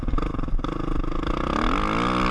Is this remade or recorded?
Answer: recorded